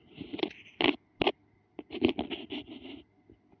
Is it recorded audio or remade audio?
recorded